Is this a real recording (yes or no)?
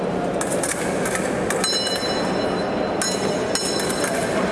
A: yes